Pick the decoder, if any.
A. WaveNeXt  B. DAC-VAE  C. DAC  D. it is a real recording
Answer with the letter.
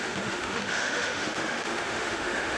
B